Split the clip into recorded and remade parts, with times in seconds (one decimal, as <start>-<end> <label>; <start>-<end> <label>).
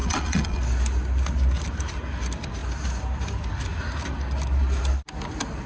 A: 0.0-0.6 remade; 0.6-5.7 recorded